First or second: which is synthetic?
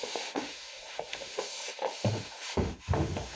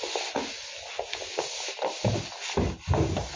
first